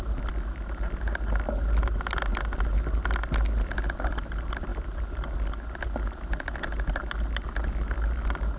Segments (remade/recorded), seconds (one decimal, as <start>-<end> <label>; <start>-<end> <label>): 0.0-8.6 recorded